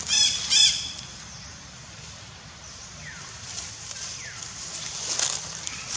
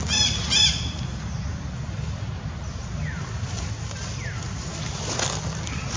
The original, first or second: second